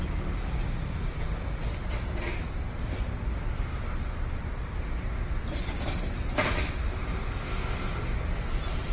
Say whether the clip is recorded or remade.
recorded